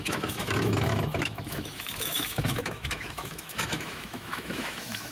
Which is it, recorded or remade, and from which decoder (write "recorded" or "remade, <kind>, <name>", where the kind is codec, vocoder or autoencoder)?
remade, autoencoder, DAC-VAE